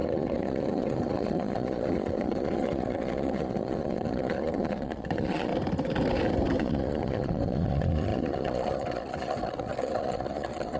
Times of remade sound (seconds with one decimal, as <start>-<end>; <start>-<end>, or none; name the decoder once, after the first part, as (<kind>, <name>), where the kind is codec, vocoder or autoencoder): 0.0-5.5 (vocoder, Vocos); 6.6-10.8